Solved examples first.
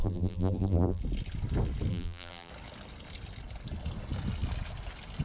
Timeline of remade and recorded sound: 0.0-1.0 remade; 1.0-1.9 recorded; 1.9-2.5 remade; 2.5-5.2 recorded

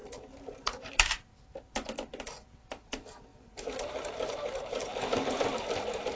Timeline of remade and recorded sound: 0.0-1.3 remade; 1.3-3.3 recorded; 3.3-6.2 remade